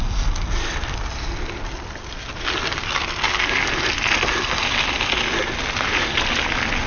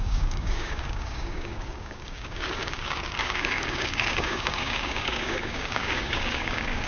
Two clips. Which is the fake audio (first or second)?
second